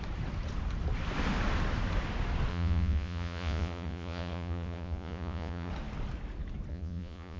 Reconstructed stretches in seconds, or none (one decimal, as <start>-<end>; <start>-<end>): 2.5-5.7; 6.7-7.4

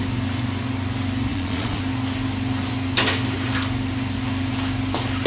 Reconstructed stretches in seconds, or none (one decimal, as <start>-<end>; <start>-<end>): 1.3-1.8

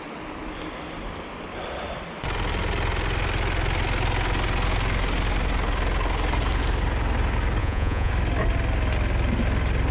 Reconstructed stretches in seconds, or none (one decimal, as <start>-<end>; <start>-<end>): 7.6-8.1

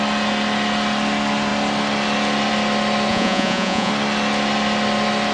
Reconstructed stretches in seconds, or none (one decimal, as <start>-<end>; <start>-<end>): 3.1-3.9